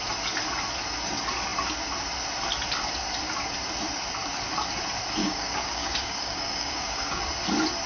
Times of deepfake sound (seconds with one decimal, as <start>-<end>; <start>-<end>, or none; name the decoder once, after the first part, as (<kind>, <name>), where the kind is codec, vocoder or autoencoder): 5.2-7.2 (codec, DAC)